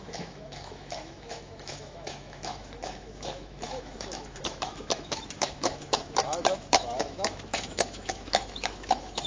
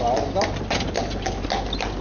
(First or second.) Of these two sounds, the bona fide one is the second